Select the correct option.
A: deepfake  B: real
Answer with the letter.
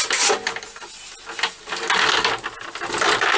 B